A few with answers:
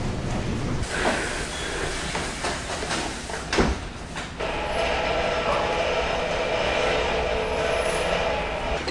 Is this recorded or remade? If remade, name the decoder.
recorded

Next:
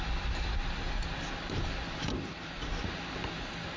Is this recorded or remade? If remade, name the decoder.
recorded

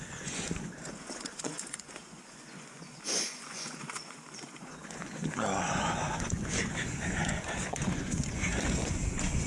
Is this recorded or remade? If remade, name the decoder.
remade, vocoder, Vocos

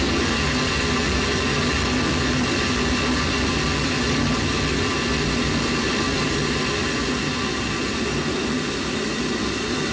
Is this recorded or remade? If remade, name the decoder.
recorded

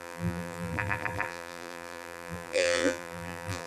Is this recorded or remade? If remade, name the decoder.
remade, vocoder, BigVGAN v2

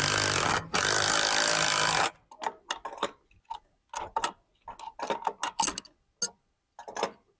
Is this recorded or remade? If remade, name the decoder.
recorded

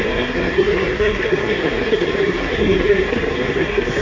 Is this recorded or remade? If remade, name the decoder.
remade, codec, SNAC